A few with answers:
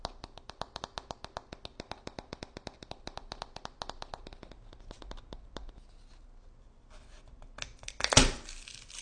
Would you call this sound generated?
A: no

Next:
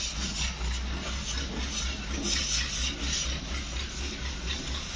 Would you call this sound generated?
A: no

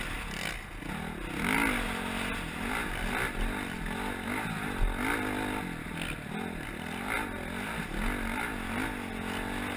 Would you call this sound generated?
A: no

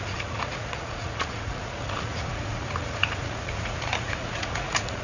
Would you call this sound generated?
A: yes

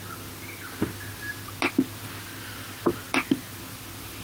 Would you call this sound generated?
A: no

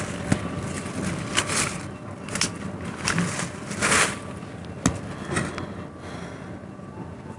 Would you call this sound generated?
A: no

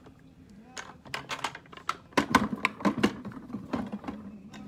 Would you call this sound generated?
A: no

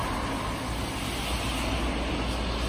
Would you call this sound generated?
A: no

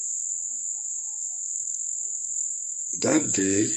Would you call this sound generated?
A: yes